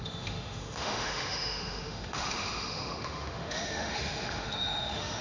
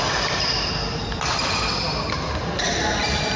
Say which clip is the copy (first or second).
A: first